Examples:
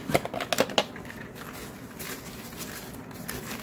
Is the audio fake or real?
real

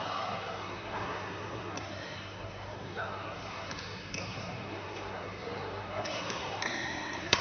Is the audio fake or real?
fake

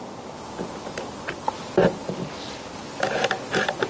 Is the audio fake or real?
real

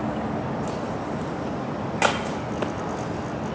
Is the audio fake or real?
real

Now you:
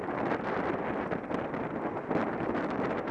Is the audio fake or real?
real